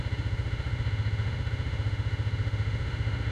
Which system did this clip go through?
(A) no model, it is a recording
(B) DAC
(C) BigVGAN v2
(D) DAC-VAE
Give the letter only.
D